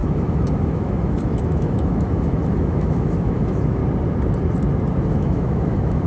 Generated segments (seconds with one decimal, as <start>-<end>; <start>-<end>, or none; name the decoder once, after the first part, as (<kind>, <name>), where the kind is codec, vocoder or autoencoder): 0.0-3.8 (autoencoder, DAC-VAE); 5.1-6.1